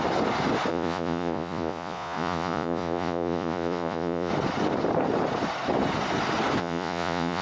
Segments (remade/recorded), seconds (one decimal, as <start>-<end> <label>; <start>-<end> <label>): 0.0-0.7 recorded; 0.7-4.3 remade; 4.3-6.6 recorded; 6.6-7.4 remade